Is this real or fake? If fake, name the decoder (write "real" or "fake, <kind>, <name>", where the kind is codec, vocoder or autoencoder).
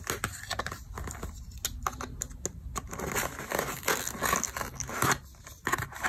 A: real